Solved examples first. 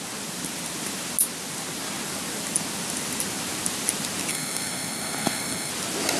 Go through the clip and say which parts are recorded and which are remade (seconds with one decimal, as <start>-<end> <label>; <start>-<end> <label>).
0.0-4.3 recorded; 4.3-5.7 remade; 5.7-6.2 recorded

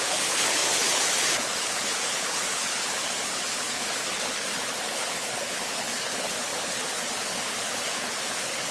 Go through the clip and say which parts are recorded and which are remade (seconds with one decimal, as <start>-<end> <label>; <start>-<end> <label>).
0.0-8.7 remade

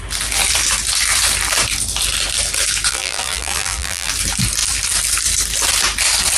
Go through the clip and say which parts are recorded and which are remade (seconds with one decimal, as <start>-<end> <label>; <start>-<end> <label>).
0.0-2.9 recorded; 2.9-4.1 remade; 4.1-6.4 recorded

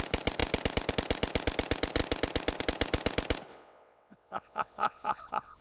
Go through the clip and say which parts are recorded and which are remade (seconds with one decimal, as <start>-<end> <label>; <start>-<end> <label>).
0.0-3.5 recorded; 3.5-5.6 remade

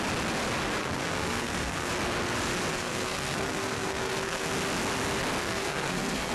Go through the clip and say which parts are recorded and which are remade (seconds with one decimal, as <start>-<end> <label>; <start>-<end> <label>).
0.0-0.8 recorded; 0.8-1.9 remade; 1.9-2.7 recorded; 2.7-4.5 remade; 4.5-5.4 recorded; 5.4-6.3 remade

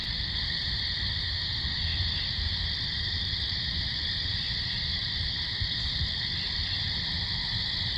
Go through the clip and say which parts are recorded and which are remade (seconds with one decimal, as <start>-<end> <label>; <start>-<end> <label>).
0.0-1.1 remade; 1.1-1.9 recorded; 1.9-6.2 remade; 6.2-8.0 recorded